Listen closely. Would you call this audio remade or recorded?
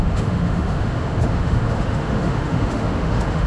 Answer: remade